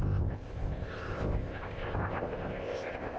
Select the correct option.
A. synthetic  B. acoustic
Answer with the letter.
A